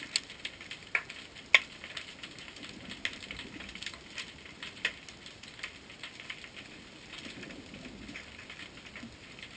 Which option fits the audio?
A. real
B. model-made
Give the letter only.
A